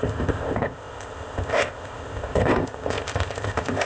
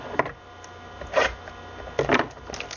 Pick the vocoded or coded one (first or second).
first